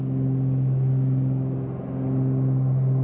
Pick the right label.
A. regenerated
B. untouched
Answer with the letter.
B